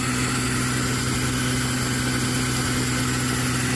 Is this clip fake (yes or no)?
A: no